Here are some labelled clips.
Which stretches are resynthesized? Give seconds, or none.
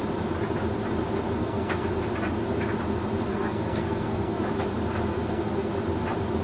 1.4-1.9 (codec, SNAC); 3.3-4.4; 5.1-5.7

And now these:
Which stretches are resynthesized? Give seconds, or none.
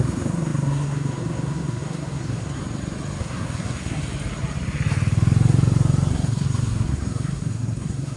0.0-2.6 (codec, SNAC); 3.2-4.0; 6.1-8.2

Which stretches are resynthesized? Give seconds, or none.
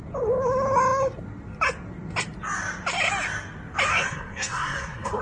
3.9-5.2 (codec, SNAC)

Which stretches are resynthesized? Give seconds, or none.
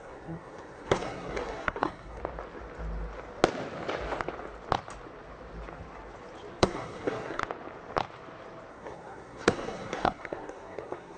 0.0-2.2 (codec, SNAC); 6.6-7.4; 8.7-11.2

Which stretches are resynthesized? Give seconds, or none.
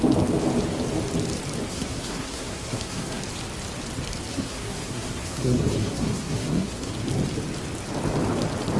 1.7-3.2 (codec, SNAC); 4.3-6.9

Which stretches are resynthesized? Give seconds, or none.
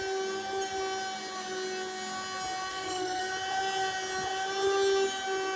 2.7-3.2 (codec, SNAC)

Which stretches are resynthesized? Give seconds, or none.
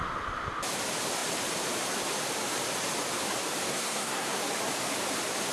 3.7-4.4 (codec, SNAC)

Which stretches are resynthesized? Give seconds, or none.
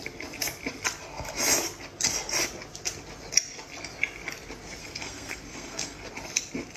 4.8-6.1 (codec, SNAC)